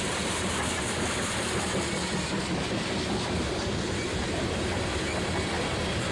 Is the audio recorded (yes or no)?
yes